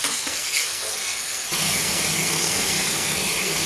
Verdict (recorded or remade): remade